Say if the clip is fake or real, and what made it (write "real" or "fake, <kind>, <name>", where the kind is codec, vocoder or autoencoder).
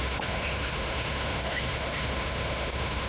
fake, autoencoder, DAC-VAE